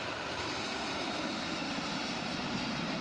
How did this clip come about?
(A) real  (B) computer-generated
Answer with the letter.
B